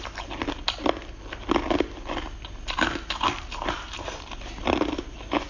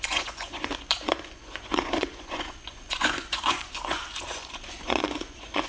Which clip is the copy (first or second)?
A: second